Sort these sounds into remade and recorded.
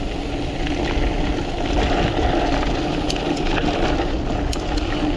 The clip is recorded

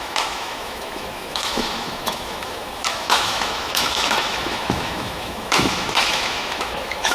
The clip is remade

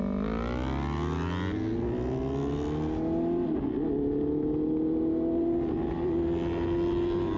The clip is recorded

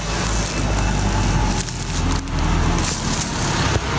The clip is recorded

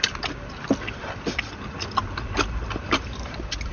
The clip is recorded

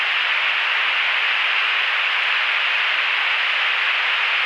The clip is remade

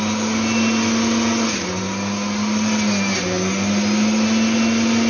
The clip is recorded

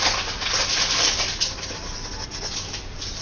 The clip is recorded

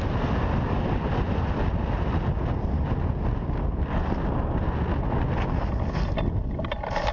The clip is recorded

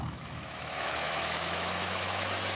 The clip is remade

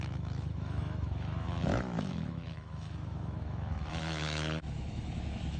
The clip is remade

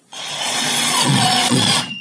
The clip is remade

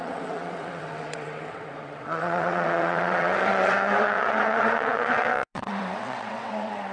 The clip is remade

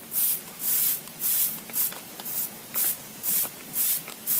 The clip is remade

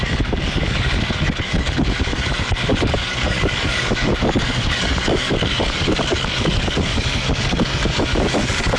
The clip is remade